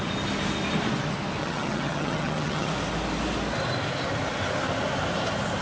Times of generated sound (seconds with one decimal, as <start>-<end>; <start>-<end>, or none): 1.4-2.7